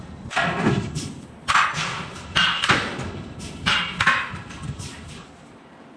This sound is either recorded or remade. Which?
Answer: remade